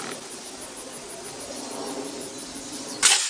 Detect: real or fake real